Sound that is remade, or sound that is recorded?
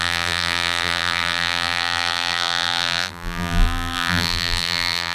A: remade